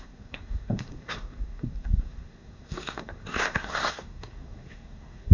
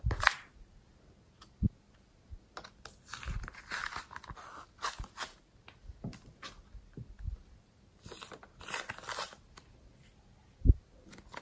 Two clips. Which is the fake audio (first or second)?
first